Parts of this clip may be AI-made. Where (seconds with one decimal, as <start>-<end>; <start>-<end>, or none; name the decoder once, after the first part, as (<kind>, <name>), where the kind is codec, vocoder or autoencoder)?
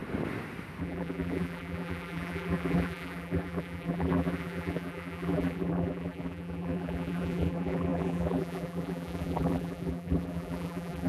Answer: 0.8-11.1 (vocoder, BigVGAN v2)